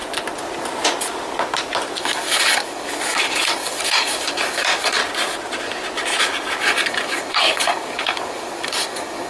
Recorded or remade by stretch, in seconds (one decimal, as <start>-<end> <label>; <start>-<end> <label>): 0.0-2.0 recorded; 2.0-5.0 remade; 5.0-6.6 recorded; 6.6-9.3 remade